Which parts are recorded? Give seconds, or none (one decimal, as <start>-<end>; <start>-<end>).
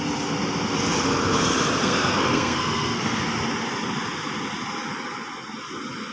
0.0-1.8; 3.2-6.1